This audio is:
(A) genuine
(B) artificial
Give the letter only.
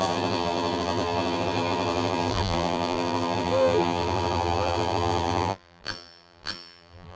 B